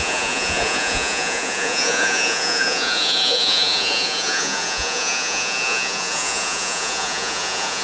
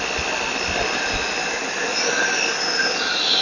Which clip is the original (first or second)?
second